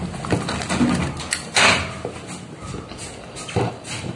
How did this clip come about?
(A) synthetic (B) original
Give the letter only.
B